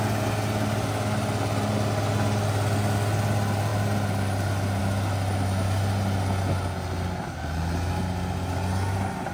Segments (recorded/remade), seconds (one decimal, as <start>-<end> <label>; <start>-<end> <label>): 0.0-9.3 recorded